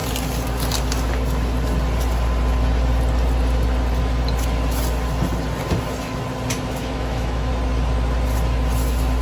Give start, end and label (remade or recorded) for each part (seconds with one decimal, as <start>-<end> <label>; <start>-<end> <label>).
0.0-6.8 recorded; 6.8-7.5 remade; 7.5-9.2 recorded